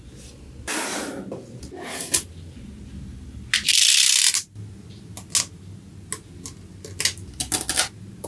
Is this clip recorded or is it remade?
recorded